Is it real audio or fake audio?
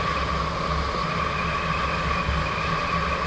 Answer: real